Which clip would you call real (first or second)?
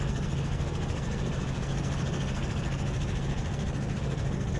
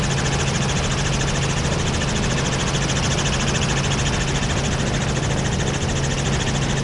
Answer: second